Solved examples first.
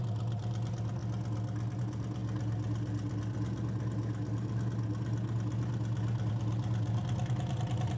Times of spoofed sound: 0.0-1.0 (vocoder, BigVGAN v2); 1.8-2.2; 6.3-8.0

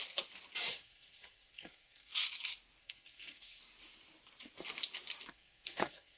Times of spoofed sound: 0.7-2.1 (codec, SNAC); 2.8-3.6; 5.3-6.2

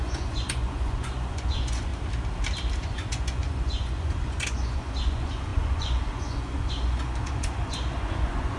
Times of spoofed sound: 0.0-1.9 (vocoder, Vocos); 2.8-8.6

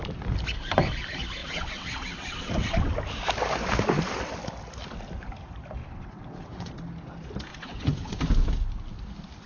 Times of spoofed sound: 1.4-2.9 (vocoder, WaveNeXt); 5.8-6.7; 7.5-8.2

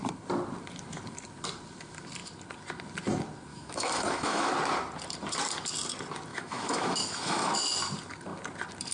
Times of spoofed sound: 3.5-4.5 (autoencoder, DAC-VAE); 6.3-7.5

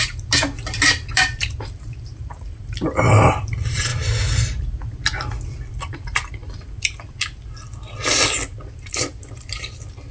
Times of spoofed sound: 0.0-3.9 (vocoder, BigVGAN v2); 5.8-6.4; 8.6-10.1

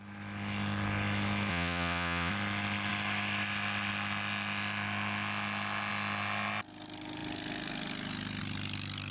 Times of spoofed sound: 1.5-2.3 (vocoder, Vocos)